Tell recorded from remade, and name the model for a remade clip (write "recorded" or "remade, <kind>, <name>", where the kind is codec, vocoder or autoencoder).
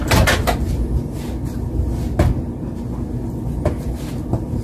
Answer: recorded